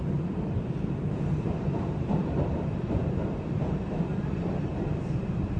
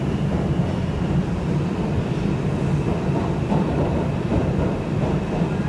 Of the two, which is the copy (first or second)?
first